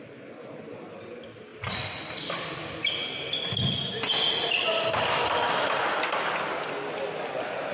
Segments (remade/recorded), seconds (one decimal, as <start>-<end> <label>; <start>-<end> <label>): 0.0-7.7 recorded